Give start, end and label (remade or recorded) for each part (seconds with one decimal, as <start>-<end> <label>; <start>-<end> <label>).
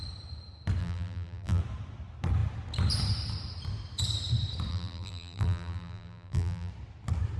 0.0-0.8 recorded; 0.8-1.6 remade; 1.6-4.7 recorded; 4.7-6.7 remade; 6.7-7.4 recorded